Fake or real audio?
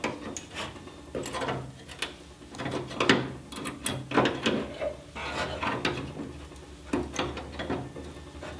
real